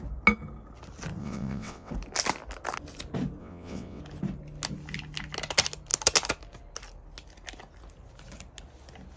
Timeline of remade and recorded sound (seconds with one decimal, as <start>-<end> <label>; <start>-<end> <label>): 0.0-1.2 recorded; 1.2-1.9 remade; 1.9-3.4 recorded; 3.4-4.0 remade; 4.0-9.2 recorded